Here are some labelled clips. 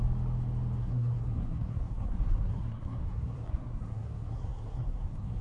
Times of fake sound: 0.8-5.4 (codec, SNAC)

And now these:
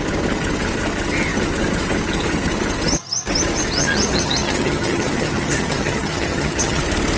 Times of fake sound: 3.8-6.8 (vocoder, HiFi-GAN)

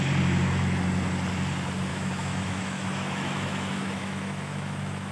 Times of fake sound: 1.9-5.1 (autoencoder, DAC-VAE)